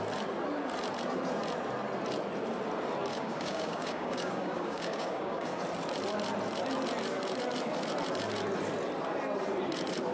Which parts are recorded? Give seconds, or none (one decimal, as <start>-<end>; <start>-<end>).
0.0-3.1; 5.6-10.1